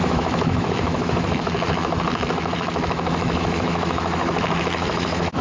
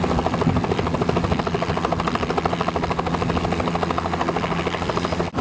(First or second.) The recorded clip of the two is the second